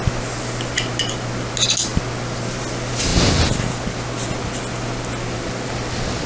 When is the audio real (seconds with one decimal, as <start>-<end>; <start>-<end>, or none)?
0.0-6.3